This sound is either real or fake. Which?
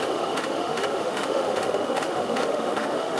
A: fake